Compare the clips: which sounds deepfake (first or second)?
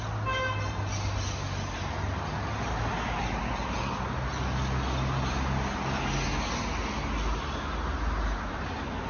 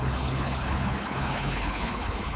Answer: second